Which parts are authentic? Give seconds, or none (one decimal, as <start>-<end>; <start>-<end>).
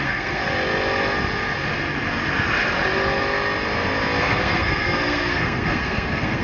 0.4-4.2